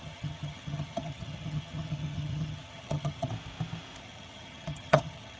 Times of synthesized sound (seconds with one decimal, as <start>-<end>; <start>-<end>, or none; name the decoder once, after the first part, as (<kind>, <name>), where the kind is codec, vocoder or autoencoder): 0.0-3.3 (vocoder, HiFi-GAN); 4.0-5.4